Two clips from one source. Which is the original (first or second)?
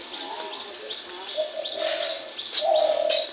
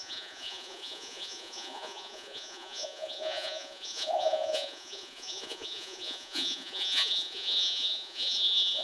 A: first